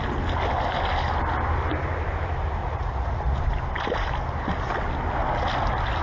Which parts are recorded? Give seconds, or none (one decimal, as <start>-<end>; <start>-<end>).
0.0-2.6; 3.4-6.0